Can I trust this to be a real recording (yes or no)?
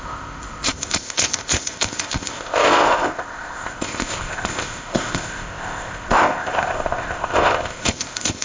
no